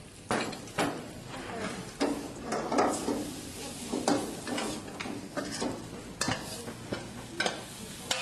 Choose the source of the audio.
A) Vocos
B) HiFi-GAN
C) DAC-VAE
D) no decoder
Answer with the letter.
D